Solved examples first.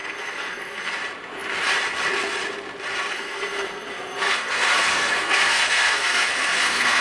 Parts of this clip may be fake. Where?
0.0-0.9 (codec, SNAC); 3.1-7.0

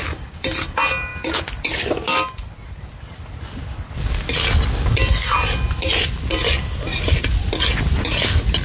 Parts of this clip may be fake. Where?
none

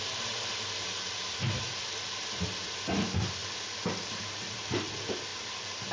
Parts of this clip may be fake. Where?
none

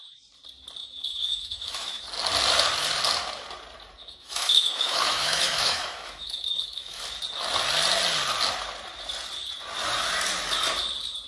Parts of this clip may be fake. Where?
0.8-2.0 (autoencoder, DAC-VAE); 4.0-7.0